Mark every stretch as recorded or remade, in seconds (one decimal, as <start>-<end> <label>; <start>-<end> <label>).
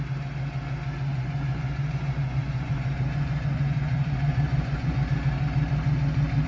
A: 0.0-1.1 recorded; 1.1-5.0 remade; 5.0-6.5 recorded